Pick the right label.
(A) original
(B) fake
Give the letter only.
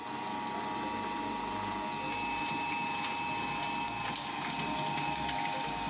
A